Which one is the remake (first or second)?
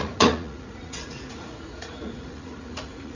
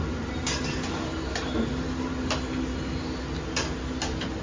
first